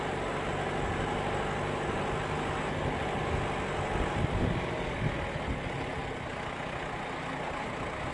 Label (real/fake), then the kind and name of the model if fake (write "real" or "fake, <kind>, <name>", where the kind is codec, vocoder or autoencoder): real